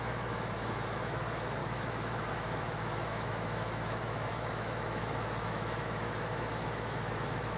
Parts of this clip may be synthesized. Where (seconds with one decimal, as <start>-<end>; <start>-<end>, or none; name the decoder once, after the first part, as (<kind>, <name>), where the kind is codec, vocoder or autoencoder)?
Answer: 0.0-7.6 (autoencoder, DAC-VAE)